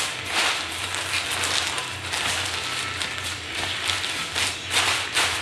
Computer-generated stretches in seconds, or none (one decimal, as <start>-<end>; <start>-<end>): none